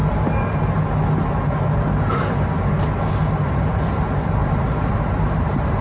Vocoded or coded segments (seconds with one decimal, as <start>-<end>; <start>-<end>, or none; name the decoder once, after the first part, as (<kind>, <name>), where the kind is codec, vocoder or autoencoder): 4.4-5.8 (vocoder, BigVGAN v2)